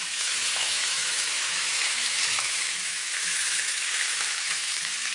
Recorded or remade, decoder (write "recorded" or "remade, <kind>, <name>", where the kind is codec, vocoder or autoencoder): remade, autoencoder, DAC-VAE